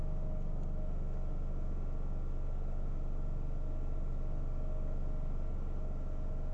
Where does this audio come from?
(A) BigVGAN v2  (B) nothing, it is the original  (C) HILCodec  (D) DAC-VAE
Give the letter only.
B